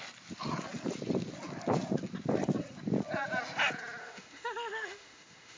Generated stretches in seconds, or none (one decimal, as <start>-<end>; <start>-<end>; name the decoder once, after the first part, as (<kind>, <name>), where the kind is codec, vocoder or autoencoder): 4.0-5.6 (autoencoder, DAC-VAE)